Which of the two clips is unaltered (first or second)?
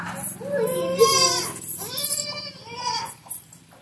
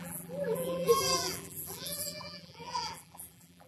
first